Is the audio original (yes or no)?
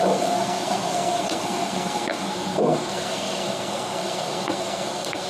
no